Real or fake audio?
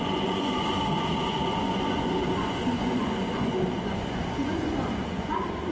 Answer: fake